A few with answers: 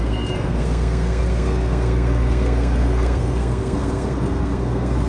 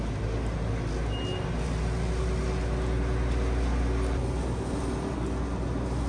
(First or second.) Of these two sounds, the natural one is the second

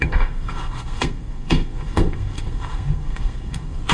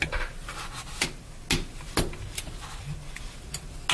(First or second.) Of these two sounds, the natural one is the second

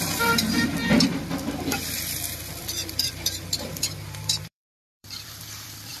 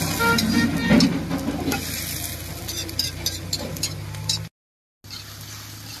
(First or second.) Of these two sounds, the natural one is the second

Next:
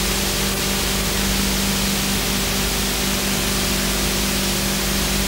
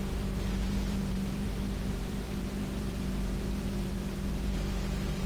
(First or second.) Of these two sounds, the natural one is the first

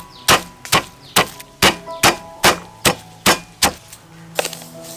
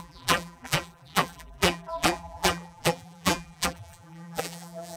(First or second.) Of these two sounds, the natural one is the first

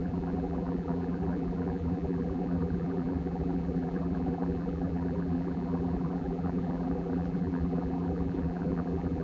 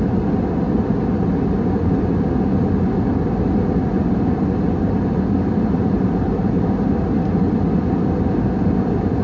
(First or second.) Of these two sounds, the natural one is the second